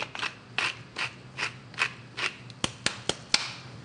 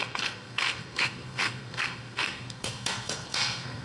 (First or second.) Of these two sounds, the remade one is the second